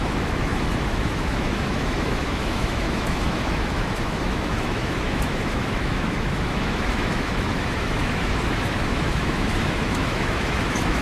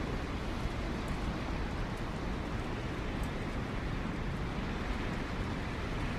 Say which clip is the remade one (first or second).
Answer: first